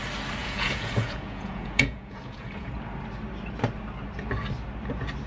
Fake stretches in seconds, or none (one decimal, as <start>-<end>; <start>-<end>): 0.4-2.7